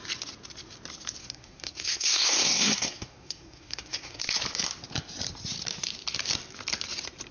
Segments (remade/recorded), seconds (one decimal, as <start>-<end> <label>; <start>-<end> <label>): 0.0-1.2 recorded; 1.2-4.2 remade; 4.2-7.3 recorded